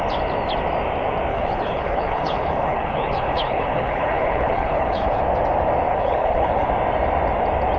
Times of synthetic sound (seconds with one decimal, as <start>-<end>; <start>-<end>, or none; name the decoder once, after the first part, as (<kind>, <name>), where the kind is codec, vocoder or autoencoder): 1.3-5.2 (codec, HILCodec); 5.9-6.7